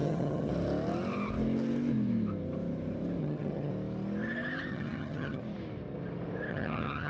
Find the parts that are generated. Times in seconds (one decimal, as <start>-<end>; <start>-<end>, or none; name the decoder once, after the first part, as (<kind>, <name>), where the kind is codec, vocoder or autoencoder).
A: 0.0-0.5 (vocoder, HiFi-GAN); 3.2-3.7; 4.7-5.4; 6.5-7.1